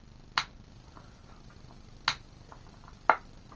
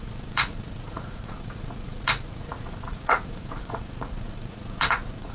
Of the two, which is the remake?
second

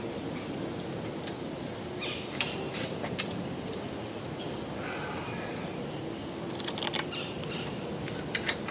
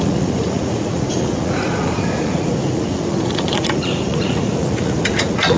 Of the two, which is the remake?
second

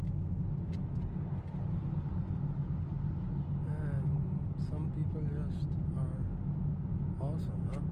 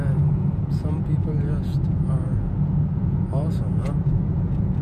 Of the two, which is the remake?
second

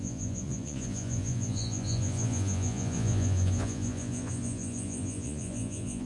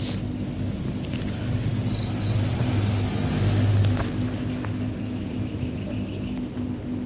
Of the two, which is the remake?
first